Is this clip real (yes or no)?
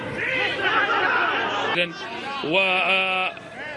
yes